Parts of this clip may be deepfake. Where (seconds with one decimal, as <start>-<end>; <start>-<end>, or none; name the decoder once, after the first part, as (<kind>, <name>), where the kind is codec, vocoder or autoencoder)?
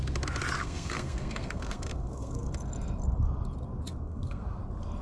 0.6-2.5 (codec, SNAC); 3.9-4.6